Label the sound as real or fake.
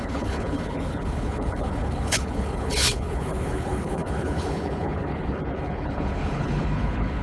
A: fake